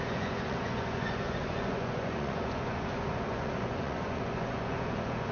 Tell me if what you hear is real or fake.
fake